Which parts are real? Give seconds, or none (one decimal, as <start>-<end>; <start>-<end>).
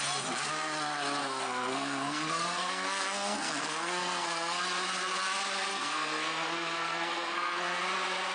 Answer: 0.0-1.2; 4.6-5.7; 7.8-8.3